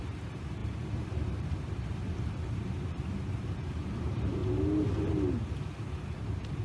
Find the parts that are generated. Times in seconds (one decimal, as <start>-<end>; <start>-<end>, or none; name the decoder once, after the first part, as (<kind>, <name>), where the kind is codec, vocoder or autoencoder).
0.0-4.4 (vocoder, BigVGAN v2); 6.1-6.6